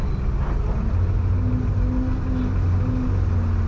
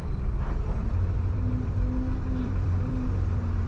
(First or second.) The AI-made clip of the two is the second